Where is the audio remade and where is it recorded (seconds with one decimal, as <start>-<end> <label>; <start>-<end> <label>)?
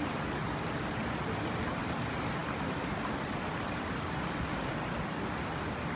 0.0-6.0 recorded